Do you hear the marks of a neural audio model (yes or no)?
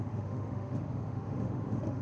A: yes